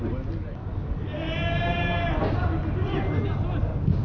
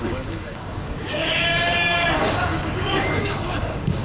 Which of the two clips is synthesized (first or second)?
second